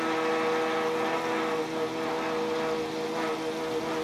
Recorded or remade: recorded